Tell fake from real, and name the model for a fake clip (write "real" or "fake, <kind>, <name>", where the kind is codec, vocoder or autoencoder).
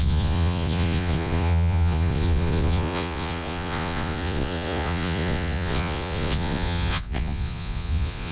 fake, vocoder, Vocos